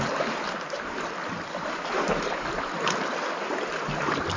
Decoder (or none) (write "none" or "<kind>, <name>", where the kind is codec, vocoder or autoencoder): none